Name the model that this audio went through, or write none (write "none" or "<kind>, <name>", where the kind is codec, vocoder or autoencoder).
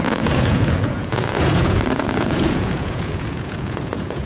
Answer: vocoder, Vocos